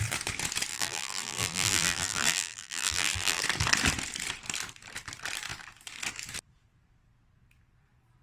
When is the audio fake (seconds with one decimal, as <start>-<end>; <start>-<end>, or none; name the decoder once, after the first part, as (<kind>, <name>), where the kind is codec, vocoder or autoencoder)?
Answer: 0.7-3.4 (vocoder, BigVGAN v2)